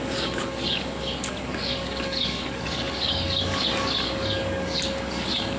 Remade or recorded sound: remade